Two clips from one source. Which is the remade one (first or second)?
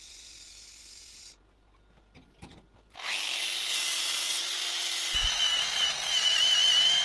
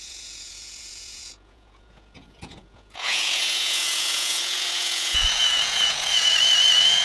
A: second